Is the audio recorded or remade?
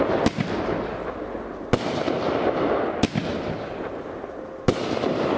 recorded